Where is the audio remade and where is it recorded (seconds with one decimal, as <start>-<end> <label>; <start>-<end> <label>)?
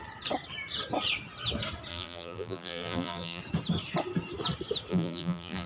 0.0-1.9 recorded; 1.9-3.4 remade; 3.4-4.9 recorded; 4.9-5.7 remade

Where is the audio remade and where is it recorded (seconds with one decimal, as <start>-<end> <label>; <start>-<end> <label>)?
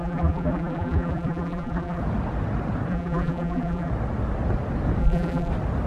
0.0-2.0 remade; 2.0-2.9 recorded; 2.9-3.9 remade; 3.9-5.0 recorded; 5.0-5.5 remade; 5.5-5.9 recorded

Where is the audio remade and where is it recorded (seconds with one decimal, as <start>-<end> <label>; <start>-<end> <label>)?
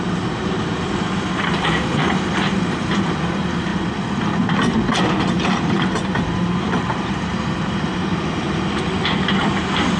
0.0-3.7 remade; 3.7-5.3 recorded; 5.3-8.1 remade; 8.1-9.4 recorded; 9.4-10.0 remade